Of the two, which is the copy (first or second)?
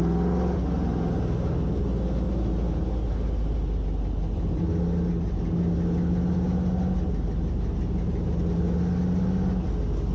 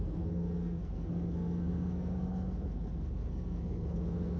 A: second